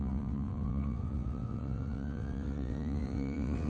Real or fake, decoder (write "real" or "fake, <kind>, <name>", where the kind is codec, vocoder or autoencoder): fake, vocoder, WaveNeXt